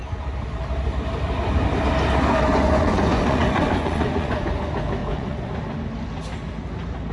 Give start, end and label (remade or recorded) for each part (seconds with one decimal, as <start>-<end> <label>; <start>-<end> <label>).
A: 0.0-2.5 recorded; 2.5-4.6 remade; 4.6-5.0 recorded; 5.0-5.5 remade; 5.5-7.1 recorded